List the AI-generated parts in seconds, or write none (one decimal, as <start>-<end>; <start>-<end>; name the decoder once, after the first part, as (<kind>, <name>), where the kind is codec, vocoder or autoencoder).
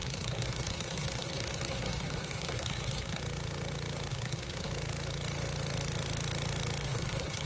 0.0-3.2 (codec, SNAC); 4.1-4.7; 6.8-7.5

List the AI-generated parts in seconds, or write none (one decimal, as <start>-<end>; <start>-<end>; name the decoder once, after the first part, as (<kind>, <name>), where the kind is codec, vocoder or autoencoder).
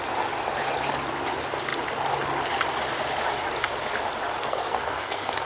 4.4-5.5 (codec, SNAC)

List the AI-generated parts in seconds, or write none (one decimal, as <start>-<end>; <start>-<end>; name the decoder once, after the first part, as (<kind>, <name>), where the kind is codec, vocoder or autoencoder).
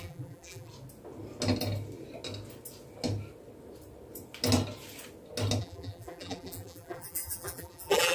0.0-0.7 (vocoder, BigVGAN v2); 5.6-8.1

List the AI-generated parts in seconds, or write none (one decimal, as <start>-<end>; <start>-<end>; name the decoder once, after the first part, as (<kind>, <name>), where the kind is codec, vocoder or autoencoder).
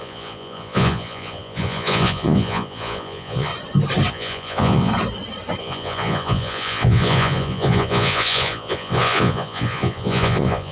0.0-3.5 (vocoder, Vocos); 4.1-4.9; 5.6-10.7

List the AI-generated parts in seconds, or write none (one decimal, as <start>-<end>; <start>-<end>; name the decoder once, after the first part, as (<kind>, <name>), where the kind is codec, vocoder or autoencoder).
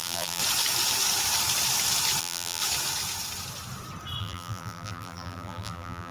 0.0-0.4 (vocoder, BigVGAN v2); 2.2-2.6; 4.2-6.1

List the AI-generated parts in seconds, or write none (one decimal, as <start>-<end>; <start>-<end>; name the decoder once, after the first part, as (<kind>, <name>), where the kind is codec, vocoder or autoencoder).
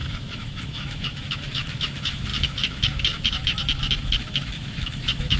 0.0-5.4 (autoencoder, DAC-VAE)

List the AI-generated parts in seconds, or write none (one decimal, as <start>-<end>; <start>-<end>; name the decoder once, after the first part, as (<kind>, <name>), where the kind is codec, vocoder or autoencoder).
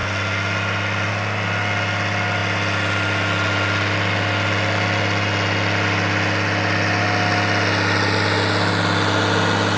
none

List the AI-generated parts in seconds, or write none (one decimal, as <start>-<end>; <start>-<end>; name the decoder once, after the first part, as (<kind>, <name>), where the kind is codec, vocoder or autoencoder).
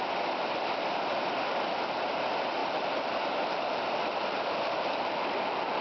2.6-5.8 (vocoder, BigVGAN v2)